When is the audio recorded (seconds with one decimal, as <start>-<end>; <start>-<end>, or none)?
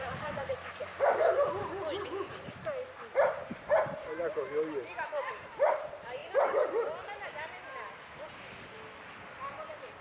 6.2-10.0